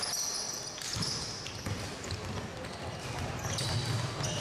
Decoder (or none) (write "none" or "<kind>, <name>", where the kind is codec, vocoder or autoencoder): none